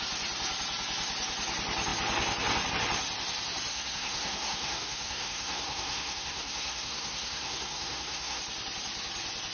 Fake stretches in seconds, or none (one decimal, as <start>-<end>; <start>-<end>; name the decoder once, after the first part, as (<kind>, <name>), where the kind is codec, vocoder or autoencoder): 3.7-8.4 (codec, SNAC)